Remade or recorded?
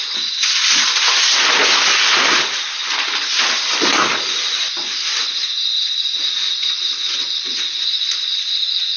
recorded